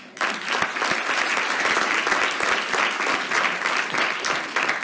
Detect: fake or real real